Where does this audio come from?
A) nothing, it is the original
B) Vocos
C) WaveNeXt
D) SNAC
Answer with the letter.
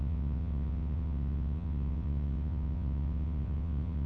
C